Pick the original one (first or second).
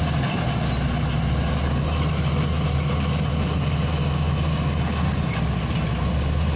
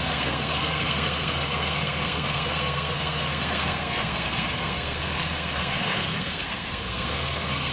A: first